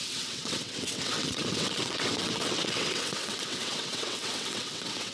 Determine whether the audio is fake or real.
fake